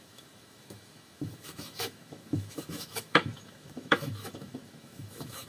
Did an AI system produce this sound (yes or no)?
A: yes